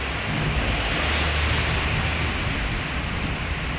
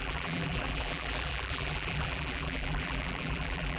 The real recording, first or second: first